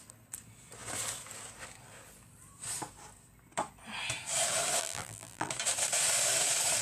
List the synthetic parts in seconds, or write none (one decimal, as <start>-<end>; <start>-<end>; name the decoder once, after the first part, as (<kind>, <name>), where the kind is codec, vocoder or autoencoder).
4.8-5.5 (vocoder, BigVGAN v2)